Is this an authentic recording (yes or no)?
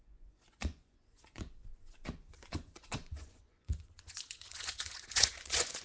no